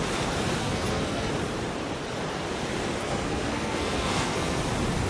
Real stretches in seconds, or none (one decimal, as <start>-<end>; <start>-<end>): 0.0-0.6; 1.3-3.0; 4.6-5.1